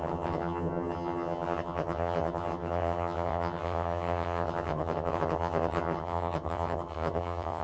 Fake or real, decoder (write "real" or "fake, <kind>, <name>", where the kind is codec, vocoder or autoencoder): fake, vocoder, HiFi-GAN